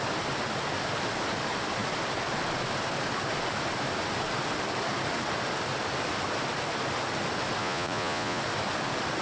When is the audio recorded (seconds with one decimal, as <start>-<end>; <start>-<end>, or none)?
0.0-7.6; 8.4-9.2

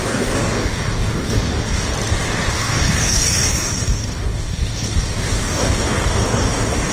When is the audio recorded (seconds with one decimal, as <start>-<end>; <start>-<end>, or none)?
1.9-2.5

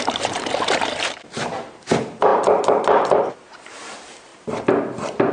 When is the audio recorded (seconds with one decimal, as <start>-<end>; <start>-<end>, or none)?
none

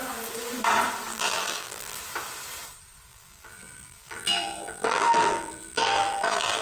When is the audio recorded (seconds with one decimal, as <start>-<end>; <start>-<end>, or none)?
0.0-1.1; 2.0-3.1

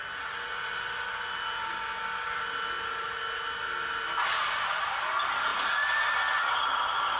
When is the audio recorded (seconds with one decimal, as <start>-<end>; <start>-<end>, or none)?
0.0-7.2

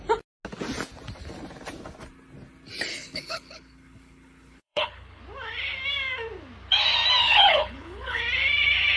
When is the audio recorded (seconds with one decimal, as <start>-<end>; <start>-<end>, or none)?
0.0-2.9; 5.2-7.2; 8.2-9.0

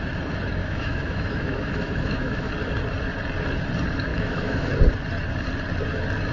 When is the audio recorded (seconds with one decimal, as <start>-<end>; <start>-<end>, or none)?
0.0-0.6; 2.5-4.1; 4.7-6.3